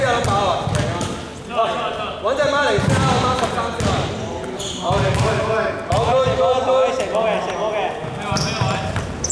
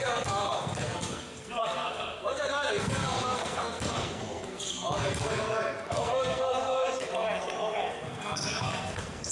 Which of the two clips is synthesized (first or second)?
second